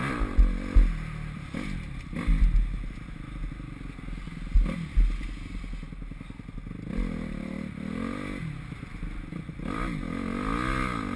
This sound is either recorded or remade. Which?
recorded